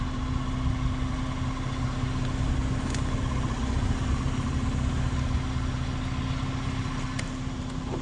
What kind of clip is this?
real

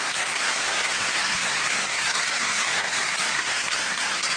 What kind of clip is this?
fake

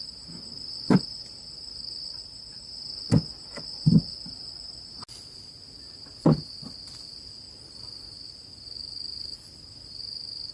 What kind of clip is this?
real